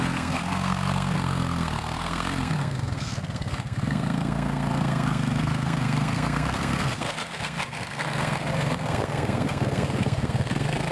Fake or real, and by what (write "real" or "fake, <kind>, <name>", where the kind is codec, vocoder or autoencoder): fake, codec, SNAC